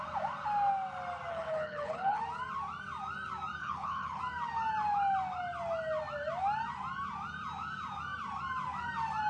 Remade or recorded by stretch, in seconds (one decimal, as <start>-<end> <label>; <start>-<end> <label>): 0.0-1.3 recorded; 1.3-2.2 remade; 2.2-3.6 recorded; 3.6-4.2 remade; 4.2-9.3 recorded